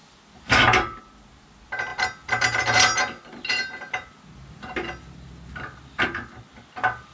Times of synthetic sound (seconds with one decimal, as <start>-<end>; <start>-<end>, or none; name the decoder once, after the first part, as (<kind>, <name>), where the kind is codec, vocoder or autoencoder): none